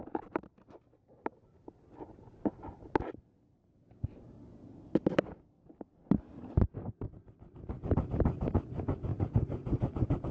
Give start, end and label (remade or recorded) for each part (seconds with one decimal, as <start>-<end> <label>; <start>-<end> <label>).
0.0-10.3 recorded